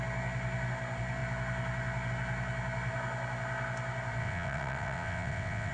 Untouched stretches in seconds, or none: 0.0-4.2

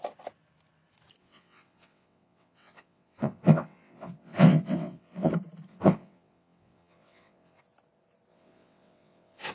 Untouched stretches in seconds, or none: 0.0-1.2; 5.3-5.7; 7.6-8.3

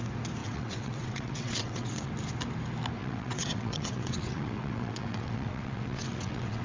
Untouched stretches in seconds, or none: 0.0-0.4; 2.1-3.0

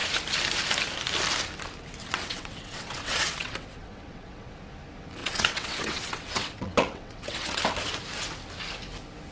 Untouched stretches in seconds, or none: 0.0-2.0; 4.5-5.2; 7.6-9.3

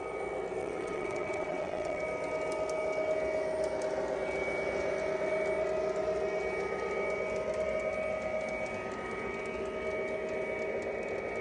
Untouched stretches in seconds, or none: 0.0-0.6; 2.0-11.4

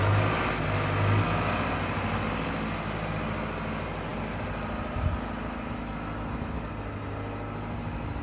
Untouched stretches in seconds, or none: 0.0-8.2

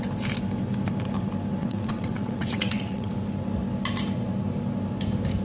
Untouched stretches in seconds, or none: 0.0-1.6; 3.1-5.4

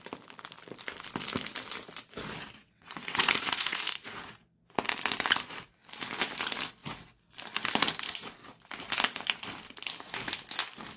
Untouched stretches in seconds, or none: 0.0-2.6; 3.8-11.0